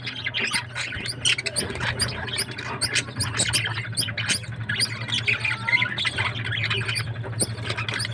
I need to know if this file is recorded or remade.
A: recorded